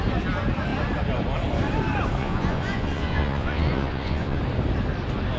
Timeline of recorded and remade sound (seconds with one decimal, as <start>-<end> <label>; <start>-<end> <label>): 0.0-2.2 recorded; 2.2-4.4 remade; 4.4-5.4 recorded